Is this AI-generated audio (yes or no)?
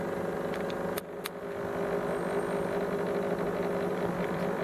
no